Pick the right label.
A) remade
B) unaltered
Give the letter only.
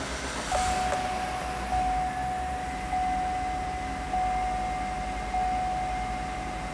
B